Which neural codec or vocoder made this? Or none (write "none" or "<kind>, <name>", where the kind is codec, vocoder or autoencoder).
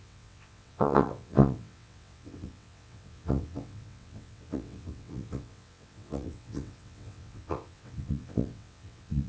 vocoder, WaveNeXt